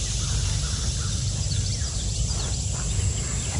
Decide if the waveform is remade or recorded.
recorded